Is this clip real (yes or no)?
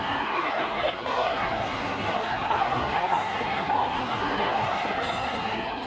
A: no